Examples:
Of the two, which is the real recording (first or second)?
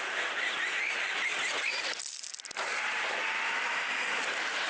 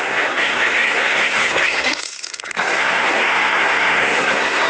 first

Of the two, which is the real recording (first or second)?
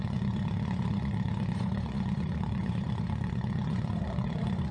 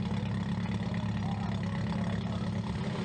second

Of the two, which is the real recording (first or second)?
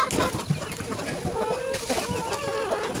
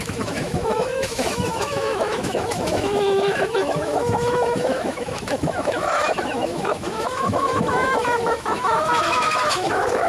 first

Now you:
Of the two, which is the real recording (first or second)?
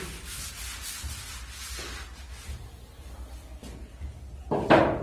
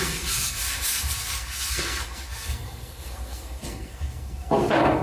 first